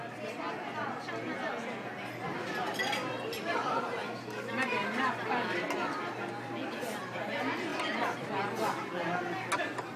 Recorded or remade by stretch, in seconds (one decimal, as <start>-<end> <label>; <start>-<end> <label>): 0.0-10.0 recorded